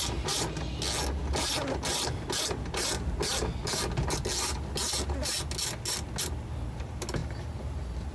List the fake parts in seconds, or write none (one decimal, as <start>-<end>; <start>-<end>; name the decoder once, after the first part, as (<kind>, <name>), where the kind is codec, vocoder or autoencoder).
none

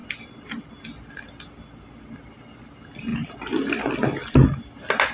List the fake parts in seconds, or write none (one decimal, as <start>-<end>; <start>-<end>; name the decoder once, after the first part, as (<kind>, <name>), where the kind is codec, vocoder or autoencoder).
none

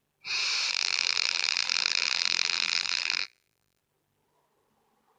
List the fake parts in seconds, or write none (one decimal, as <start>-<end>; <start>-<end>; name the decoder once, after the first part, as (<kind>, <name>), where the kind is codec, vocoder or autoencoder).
0.7-3.8 (vocoder, BigVGAN v2)

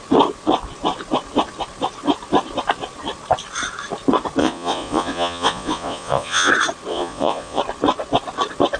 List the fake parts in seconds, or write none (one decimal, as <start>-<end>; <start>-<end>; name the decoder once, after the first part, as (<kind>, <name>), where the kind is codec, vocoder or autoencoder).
4.4-6.5 (vocoder, Vocos); 6.9-7.6

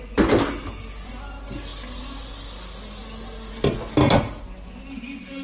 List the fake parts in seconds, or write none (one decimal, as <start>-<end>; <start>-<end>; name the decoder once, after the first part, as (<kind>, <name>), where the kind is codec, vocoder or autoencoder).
none

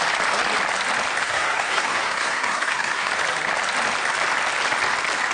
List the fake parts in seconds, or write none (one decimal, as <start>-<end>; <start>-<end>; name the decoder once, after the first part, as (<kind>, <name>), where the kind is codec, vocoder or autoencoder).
1.2-3.1 (codec, SNAC)